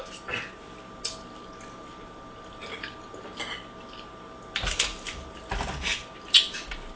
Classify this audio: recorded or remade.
recorded